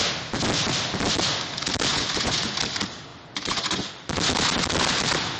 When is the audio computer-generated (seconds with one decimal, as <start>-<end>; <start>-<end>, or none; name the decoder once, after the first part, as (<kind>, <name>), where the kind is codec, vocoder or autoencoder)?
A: 1.9-2.6 (vocoder, Vocos); 3.1-3.9